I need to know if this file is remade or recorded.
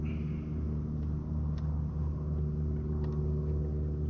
recorded